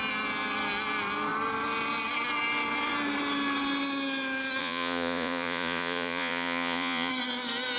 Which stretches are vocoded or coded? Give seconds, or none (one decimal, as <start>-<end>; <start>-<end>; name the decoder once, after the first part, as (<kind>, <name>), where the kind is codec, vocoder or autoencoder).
4.6-7.1 (vocoder, Vocos)